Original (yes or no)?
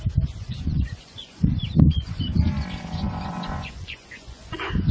no